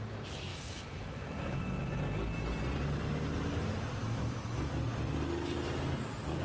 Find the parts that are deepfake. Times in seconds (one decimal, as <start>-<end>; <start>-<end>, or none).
0.5-2.0; 4.0-4.7